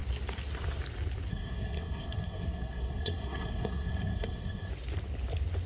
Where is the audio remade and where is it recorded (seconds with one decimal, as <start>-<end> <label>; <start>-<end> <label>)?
0.0-1.3 recorded; 1.3-4.7 remade; 4.7-5.7 recorded